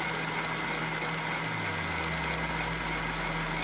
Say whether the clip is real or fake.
real